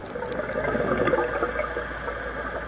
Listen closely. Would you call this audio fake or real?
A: real